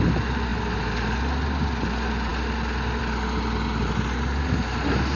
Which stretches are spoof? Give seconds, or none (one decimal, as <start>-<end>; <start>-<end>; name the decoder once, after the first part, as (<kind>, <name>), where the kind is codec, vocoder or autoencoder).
none